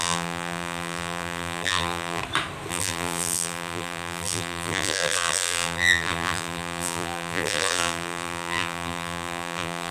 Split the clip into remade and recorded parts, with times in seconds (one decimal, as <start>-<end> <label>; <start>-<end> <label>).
0.0-2.2 remade; 2.2-2.7 recorded; 2.7-9.9 remade